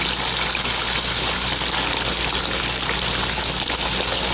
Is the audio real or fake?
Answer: real